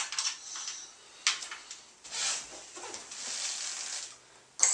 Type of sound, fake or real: real